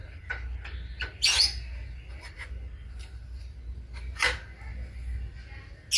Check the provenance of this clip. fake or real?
real